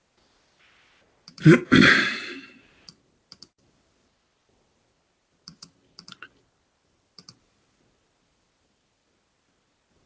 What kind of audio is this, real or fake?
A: fake